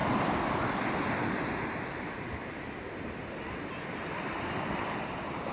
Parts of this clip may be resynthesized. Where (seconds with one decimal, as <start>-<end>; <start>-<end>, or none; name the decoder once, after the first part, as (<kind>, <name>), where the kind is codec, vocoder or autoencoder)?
0.0-0.6 (vocoder, BigVGAN v2); 2.4-4.7